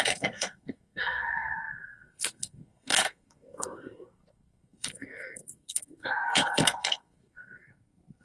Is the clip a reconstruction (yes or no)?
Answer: yes